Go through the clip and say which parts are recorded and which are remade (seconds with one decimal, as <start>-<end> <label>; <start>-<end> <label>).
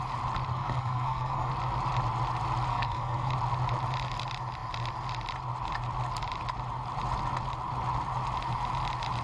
0.0-0.5 recorded; 0.5-1.5 remade; 1.5-2.7 recorded; 2.7-3.3 remade; 3.3-9.2 recorded